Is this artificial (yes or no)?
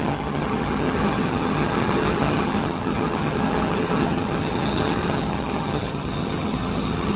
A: yes